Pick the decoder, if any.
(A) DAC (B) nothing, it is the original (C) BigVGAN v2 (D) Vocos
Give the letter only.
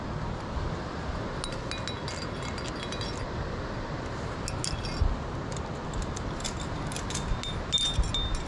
B